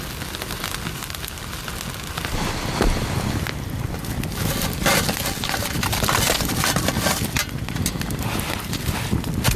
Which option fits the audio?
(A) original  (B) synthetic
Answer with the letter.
A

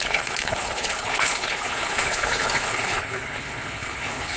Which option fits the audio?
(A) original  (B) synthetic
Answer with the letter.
B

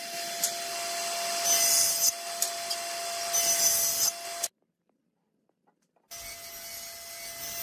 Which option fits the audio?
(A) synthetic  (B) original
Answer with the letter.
B